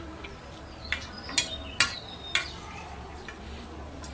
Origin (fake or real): real